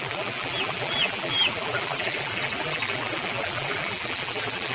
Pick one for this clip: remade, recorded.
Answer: remade